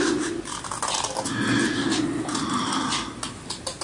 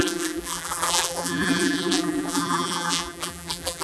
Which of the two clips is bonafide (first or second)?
first